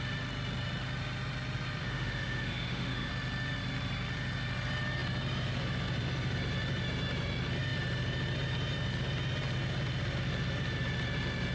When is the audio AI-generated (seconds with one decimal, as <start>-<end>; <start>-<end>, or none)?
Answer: 1.8-3.1

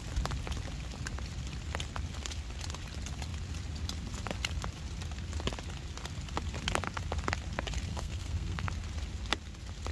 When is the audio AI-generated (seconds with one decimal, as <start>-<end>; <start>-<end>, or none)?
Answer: 7.9-8.7

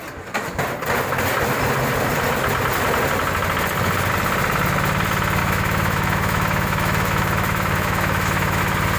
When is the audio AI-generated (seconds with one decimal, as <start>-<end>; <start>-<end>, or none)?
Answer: 5.4-8.6

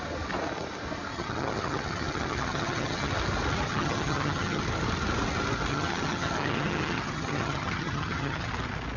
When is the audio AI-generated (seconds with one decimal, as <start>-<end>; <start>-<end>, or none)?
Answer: 1.1-3.1; 3.7-4.6; 5.7-8.5

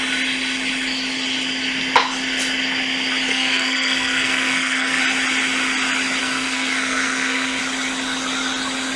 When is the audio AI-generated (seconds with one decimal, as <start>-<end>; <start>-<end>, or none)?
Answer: 3.3-5.0; 6.2-7.6